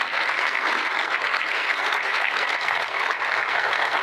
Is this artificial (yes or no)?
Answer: yes